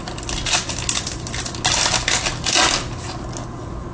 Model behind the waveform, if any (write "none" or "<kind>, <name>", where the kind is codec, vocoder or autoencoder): none